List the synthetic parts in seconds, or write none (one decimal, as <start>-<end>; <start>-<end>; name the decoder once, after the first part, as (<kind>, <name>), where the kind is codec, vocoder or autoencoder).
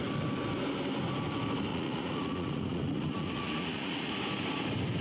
1.7-4.1 (vocoder, Vocos)